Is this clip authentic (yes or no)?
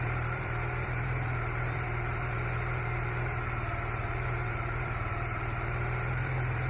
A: no